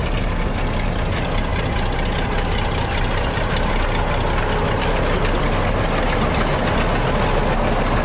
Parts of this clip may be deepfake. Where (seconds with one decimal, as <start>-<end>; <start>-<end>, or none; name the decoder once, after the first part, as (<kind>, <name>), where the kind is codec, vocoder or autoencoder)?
none